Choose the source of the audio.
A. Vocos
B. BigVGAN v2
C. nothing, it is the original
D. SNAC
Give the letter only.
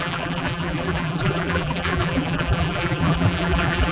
B